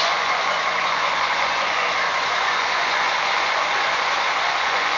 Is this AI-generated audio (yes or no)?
yes